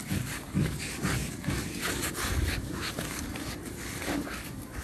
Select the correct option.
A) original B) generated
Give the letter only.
B